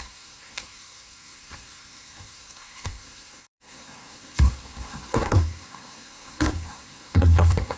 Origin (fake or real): fake